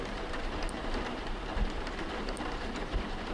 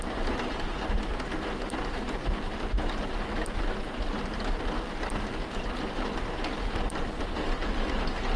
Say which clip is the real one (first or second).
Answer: second